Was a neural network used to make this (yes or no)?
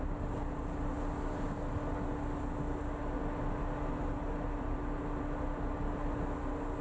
no